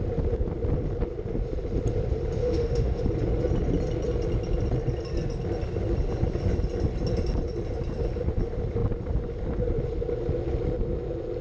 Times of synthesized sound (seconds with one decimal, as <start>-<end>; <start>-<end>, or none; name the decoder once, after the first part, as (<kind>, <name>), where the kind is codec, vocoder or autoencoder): 2.4-3.0 (autoencoder, DAC-VAE)